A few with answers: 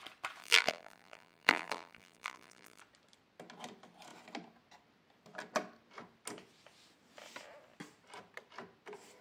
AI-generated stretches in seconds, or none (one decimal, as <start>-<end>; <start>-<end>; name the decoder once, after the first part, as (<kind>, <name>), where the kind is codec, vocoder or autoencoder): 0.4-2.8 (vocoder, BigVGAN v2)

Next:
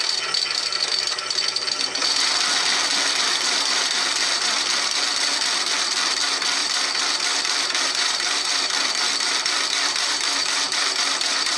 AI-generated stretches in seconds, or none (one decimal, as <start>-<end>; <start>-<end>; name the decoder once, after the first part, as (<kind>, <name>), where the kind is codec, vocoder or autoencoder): 6.6-11.6 (vocoder, BigVGAN v2)

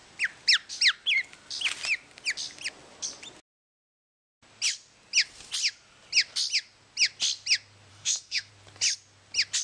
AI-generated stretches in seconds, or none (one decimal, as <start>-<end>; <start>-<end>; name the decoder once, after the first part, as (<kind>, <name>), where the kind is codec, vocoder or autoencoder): 7.9-8.5 (autoencoder, DAC-VAE)

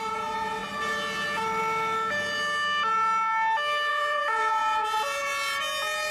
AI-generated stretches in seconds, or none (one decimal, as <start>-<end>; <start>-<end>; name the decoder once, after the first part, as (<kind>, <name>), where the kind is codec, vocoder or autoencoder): 0.0-0.6 (vocoder, Vocos); 3.9-5.3

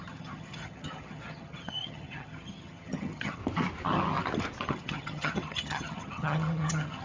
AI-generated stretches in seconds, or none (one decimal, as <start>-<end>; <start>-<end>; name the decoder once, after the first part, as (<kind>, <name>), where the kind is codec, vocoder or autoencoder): 0.0-3.4 (vocoder, HiFi-GAN); 4.7-7.0

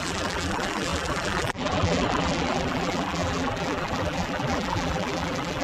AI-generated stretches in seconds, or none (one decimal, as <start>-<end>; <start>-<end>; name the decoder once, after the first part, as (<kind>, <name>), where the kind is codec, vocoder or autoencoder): 0.0-5.6 (vocoder, BigVGAN v2)